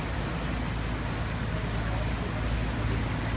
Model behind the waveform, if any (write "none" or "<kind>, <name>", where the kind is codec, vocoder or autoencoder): none